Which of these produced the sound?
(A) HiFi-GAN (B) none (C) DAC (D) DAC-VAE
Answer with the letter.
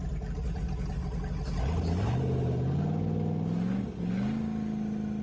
B